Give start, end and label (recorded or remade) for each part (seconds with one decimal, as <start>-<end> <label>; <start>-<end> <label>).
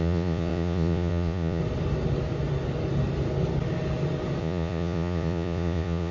0.0-1.6 remade; 1.6-4.4 recorded; 4.4-6.1 remade